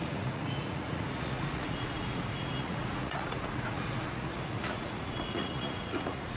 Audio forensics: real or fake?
fake